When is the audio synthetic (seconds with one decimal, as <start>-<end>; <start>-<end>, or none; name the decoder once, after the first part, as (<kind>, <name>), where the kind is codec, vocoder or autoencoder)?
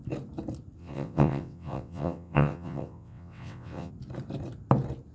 0.8-3.9 (vocoder, WaveNeXt)